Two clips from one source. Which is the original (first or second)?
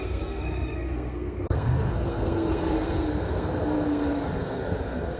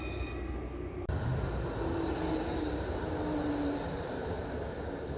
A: second